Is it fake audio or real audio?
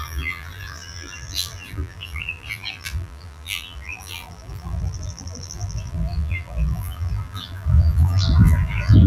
fake